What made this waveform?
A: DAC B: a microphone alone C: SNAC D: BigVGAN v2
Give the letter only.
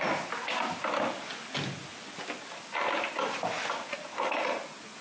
B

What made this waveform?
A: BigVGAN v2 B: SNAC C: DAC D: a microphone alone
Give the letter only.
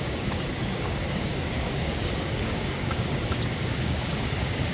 C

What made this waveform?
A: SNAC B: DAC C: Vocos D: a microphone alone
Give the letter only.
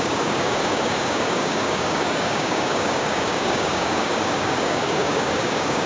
B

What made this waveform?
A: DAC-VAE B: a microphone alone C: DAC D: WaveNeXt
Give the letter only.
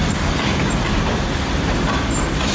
B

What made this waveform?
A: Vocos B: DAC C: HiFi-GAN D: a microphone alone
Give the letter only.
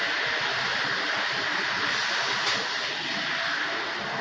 D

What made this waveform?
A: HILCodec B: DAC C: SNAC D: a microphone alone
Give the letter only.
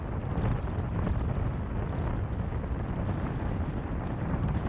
D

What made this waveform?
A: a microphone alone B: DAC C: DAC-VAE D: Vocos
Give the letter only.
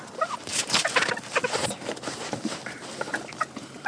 A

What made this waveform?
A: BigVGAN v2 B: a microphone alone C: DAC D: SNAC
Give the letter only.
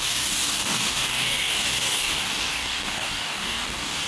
C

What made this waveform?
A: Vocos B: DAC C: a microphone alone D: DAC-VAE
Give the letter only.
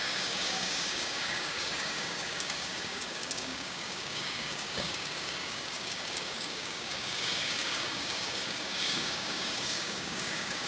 B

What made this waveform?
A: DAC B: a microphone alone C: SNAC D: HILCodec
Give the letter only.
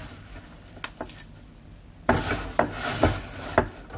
B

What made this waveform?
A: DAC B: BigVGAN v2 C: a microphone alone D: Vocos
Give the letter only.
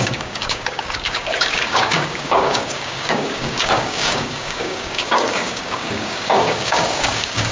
A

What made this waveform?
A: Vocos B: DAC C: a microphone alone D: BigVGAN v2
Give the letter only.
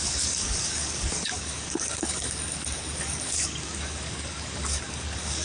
B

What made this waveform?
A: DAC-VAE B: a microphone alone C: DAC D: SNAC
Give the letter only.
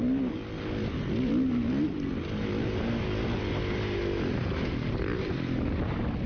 B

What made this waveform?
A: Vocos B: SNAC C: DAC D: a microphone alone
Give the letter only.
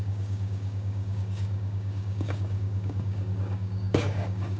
C